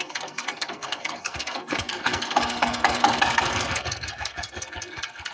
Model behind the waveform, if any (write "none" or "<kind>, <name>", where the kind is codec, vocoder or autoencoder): codec, SNAC